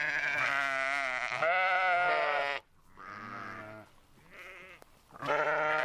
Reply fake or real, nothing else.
real